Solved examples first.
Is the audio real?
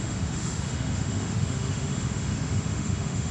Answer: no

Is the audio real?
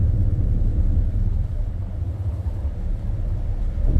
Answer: no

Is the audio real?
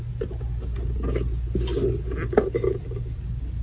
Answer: yes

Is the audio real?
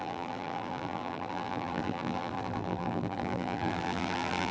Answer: no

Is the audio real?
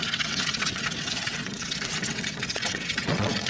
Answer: no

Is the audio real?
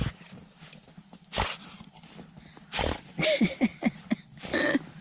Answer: yes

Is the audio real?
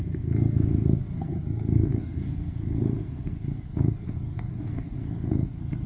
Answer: no